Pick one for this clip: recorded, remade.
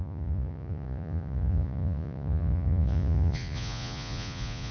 remade